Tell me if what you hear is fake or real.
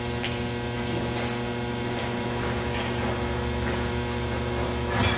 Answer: real